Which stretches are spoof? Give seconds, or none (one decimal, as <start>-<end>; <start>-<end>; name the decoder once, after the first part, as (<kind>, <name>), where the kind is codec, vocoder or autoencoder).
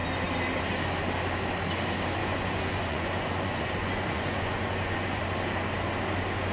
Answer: 2.2-5.2 (vocoder, Vocos)